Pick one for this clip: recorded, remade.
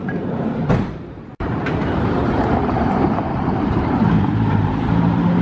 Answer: remade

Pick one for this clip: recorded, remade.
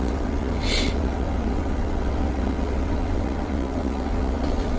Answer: remade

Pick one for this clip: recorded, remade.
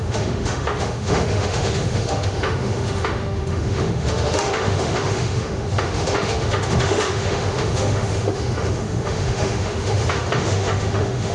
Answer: remade